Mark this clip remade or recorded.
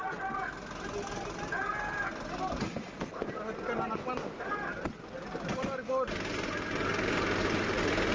recorded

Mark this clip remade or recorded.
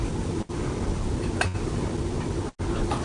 recorded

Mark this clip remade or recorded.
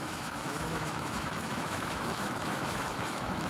remade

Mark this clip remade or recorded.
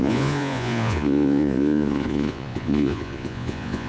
remade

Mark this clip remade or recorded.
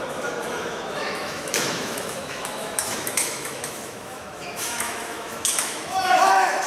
remade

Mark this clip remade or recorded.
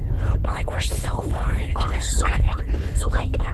remade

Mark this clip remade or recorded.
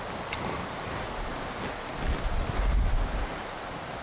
recorded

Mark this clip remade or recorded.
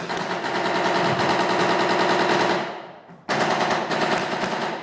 recorded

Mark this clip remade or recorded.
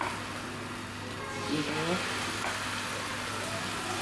recorded